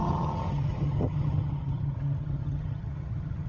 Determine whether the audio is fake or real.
fake